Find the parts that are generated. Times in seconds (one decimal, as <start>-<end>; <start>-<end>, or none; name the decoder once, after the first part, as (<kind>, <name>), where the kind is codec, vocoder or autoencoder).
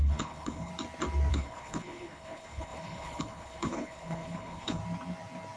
0.0-0.7 (codec, HILCodec); 1.3-4.8